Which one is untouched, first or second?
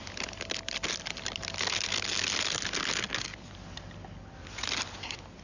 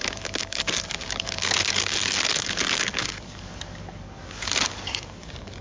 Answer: first